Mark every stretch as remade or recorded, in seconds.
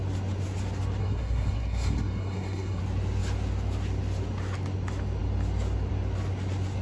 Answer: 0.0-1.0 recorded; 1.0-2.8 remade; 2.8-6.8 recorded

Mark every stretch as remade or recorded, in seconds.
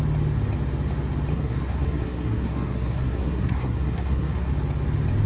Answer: 0.0-1.3 recorded; 1.3-4.5 remade; 4.5-5.3 recorded